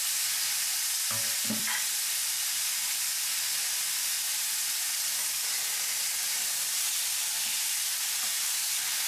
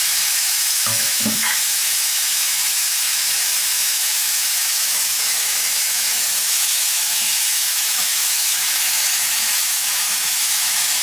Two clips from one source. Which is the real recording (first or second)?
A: first